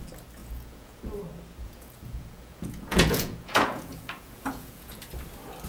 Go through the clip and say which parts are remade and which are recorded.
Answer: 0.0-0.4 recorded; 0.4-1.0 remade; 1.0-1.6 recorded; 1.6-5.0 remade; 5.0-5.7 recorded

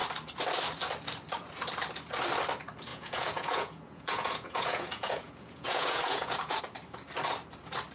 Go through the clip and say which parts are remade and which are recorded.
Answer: 0.0-2.9 recorded; 2.9-6.6 remade; 6.6-7.9 recorded

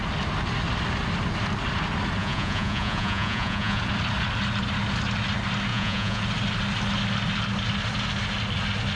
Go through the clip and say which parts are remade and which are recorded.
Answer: 0.0-2.2 recorded; 2.2-3.8 remade; 3.8-5.7 recorded; 5.7-6.2 remade; 6.2-9.0 recorded

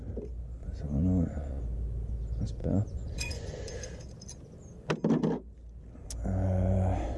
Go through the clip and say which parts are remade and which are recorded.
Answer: 0.0-0.6 recorded; 0.6-1.6 remade; 1.6-2.6 recorded; 2.6-3.7 remade; 3.7-7.2 recorded

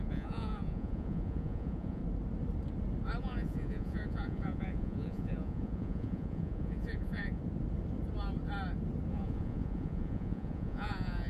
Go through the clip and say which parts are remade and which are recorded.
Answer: 0.0-2.0 remade; 2.0-3.2 recorded; 3.2-7.4 remade; 7.4-9.1 recorded; 9.1-11.3 remade

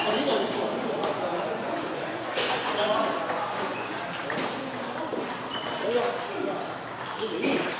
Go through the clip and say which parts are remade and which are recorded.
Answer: 0.0-1.1 recorded; 1.1-4.0 remade; 4.0-7.8 recorded

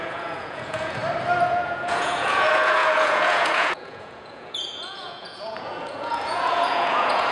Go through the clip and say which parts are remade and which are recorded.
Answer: 0.0-1.0 remade; 1.0-1.5 recorded; 1.5-7.3 remade

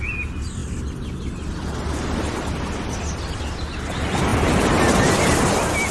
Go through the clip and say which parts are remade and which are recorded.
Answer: 0.0-5.9 recorded